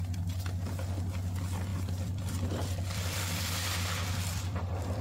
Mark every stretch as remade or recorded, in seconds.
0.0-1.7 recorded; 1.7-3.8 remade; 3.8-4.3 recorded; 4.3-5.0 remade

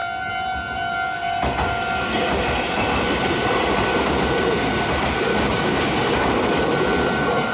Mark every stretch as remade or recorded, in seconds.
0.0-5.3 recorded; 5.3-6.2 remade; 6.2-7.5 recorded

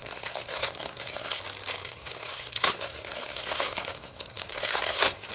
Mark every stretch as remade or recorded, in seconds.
0.0-1.4 remade; 1.4-1.8 recorded; 1.8-5.3 remade